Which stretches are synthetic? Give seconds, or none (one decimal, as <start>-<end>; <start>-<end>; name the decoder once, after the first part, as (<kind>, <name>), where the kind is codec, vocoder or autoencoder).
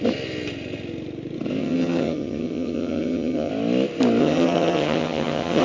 1.6-3.5 (vocoder, HiFi-GAN); 4.2-5.6